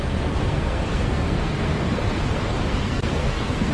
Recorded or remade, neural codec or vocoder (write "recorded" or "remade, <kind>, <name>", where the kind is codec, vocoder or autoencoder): remade, codec, SNAC